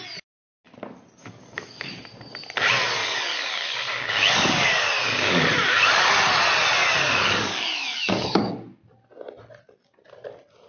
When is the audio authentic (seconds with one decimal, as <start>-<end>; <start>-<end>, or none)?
0.0-1.2; 1.9-3.0; 6.1-6.8; 8.5-10.7